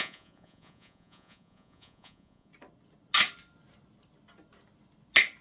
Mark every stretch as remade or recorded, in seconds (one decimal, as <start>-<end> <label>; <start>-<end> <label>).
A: 0.0-2.5 remade; 2.5-5.4 recorded